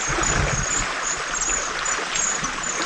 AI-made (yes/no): no